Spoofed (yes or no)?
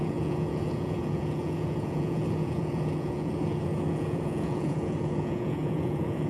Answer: yes